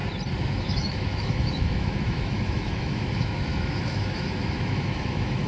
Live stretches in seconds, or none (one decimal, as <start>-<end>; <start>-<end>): 0.0-0.5